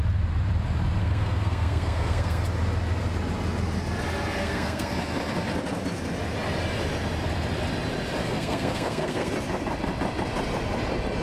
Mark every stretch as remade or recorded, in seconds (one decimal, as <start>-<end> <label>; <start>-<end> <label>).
0.0-1.0 recorded; 1.0-2.4 remade; 2.4-4.4 recorded; 4.4-4.9 remade; 4.9-8.2 recorded; 8.2-9.3 remade; 9.3-11.2 recorded